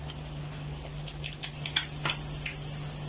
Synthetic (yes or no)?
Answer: no